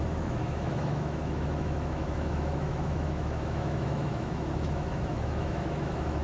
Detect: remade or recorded remade